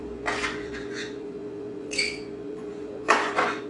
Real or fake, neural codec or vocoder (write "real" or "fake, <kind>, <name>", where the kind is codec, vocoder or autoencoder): fake, vocoder, Vocos